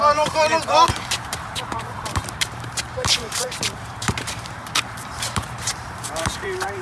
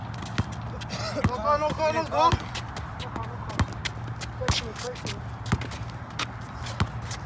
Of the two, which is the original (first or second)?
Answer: second